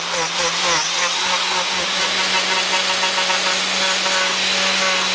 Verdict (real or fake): real